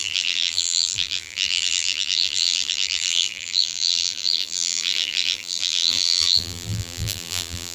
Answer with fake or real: fake